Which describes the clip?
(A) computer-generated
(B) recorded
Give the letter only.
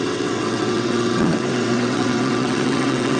A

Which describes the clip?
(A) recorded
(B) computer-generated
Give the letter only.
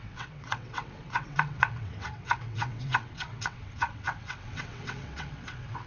B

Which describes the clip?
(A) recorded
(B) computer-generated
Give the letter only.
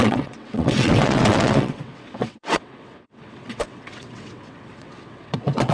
B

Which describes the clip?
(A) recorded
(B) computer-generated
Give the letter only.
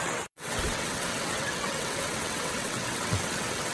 B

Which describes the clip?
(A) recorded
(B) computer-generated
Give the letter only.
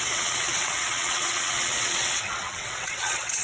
B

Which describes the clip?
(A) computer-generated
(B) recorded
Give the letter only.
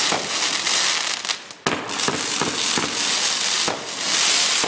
B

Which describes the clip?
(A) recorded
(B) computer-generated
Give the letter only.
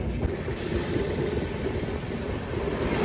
A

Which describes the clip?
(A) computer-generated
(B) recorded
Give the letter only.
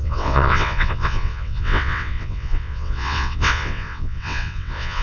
A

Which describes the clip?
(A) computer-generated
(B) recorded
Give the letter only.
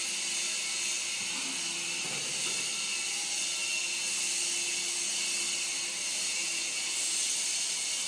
B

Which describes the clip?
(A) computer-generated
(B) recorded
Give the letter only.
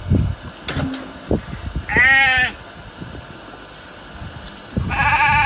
B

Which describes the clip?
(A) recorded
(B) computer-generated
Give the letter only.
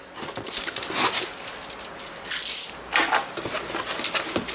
A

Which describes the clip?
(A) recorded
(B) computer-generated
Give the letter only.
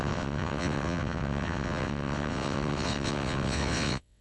B